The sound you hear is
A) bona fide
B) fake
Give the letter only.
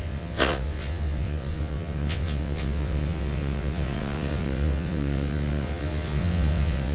B